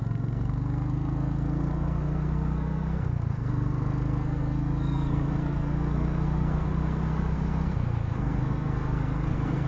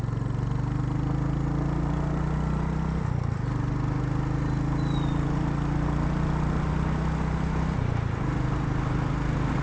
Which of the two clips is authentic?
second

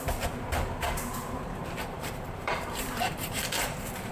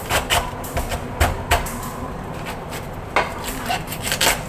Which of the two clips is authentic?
second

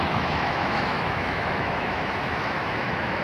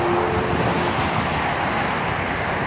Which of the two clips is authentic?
second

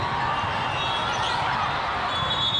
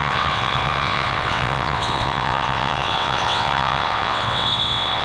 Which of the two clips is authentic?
first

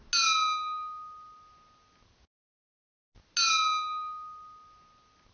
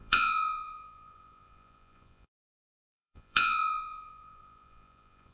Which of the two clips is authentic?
first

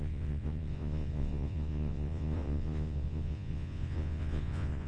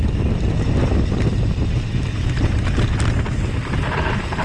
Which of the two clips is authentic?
second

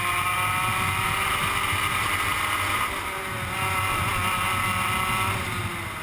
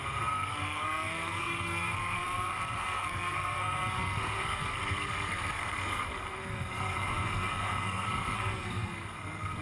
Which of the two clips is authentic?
first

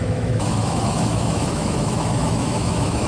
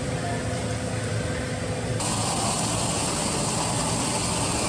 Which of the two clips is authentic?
second